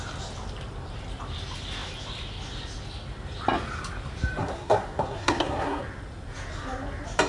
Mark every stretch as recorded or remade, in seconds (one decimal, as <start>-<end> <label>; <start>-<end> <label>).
0.0-4.4 recorded; 4.4-5.8 remade; 5.8-7.3 recorded